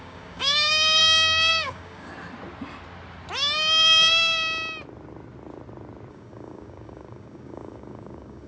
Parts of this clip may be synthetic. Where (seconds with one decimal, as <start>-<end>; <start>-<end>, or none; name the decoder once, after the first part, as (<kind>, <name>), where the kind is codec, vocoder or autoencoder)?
0.0-1.0 (codec, DAC); 1.5-2.1; 6.1-8.5

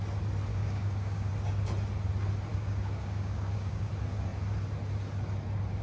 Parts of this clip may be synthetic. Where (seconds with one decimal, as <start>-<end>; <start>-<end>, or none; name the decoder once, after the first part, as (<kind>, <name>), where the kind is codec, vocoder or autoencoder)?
0.5-1.3 (codec, DAC); 2.5-3.9

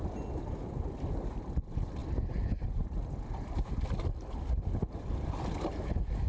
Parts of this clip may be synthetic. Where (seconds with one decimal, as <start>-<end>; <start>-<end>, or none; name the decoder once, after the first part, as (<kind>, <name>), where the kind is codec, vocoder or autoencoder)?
none

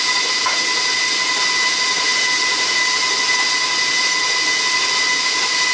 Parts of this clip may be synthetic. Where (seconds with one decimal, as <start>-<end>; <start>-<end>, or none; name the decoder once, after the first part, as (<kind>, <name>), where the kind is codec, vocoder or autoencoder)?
none